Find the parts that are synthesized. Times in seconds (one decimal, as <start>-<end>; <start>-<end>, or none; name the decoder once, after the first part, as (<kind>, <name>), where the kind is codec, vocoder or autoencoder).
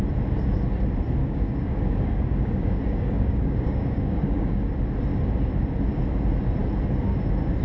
1.2-4.7 (codec, DAC)